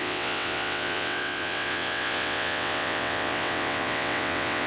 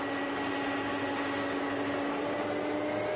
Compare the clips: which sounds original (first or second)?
second